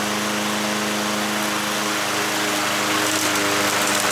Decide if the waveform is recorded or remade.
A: recorded